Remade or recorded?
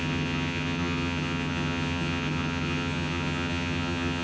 remade